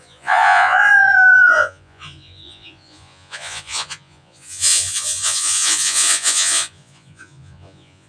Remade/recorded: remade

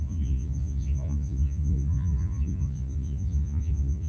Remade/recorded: remade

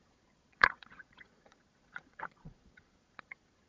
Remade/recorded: remade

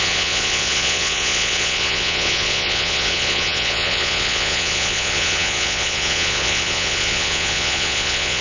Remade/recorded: remade